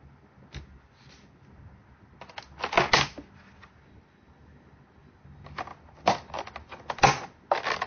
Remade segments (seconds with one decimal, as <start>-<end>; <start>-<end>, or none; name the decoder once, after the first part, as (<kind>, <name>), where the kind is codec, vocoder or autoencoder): none